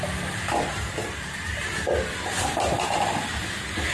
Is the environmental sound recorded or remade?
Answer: recorded